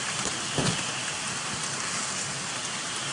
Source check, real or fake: real